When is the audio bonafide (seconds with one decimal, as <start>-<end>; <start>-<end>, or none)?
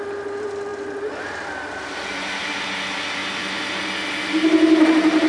0.0-5.3